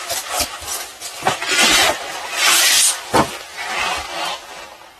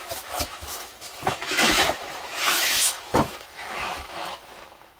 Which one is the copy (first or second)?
second